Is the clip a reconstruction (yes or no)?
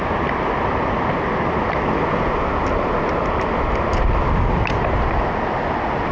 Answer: no